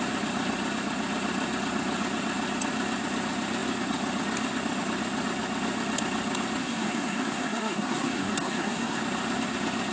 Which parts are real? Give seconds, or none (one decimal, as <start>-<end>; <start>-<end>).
0.0-6.6; 9.0-9.9